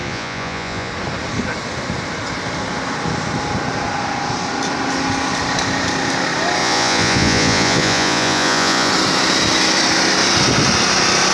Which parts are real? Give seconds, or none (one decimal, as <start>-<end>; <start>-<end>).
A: 0.9-6.6; 8.9-11.3